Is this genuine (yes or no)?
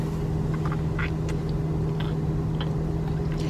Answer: yes